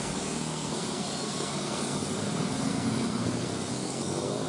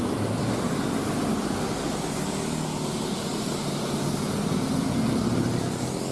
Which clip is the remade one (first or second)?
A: first